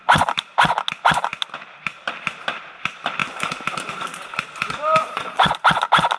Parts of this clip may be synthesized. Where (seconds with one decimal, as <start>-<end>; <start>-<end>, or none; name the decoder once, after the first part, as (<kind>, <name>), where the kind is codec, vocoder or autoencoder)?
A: 5.0-5.5 (vocoder, Vocos)